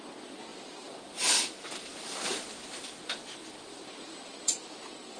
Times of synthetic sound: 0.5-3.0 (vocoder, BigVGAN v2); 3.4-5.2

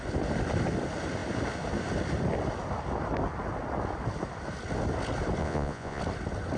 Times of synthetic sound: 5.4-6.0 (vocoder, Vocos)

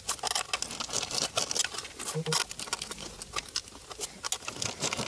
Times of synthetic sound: none